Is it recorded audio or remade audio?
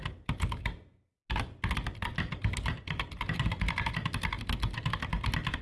recorded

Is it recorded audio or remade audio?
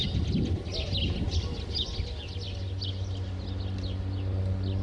recorded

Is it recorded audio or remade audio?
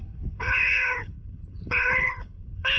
remade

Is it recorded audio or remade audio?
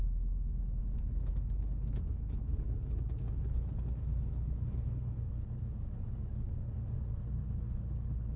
remade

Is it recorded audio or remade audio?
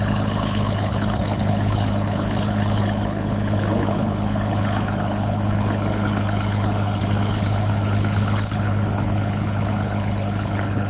remade